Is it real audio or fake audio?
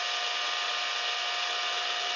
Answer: real